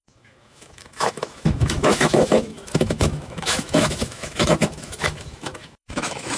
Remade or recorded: remade